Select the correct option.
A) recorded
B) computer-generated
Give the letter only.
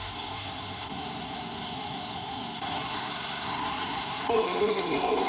B